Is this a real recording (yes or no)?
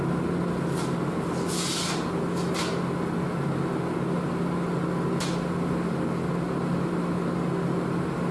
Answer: yes